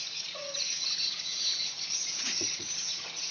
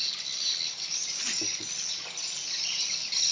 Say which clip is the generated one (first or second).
first